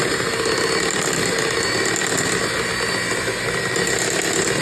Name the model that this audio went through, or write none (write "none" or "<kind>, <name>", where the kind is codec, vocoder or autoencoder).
none